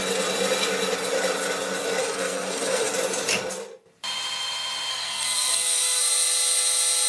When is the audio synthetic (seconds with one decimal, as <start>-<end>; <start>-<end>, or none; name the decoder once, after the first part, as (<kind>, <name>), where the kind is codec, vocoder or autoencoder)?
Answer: 2.0-2.9 (codec, SNAC); 4.9-6.0